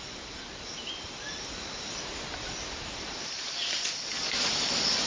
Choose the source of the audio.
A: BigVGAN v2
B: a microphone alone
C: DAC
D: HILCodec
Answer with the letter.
B